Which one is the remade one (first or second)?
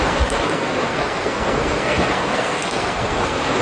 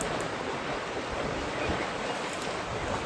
first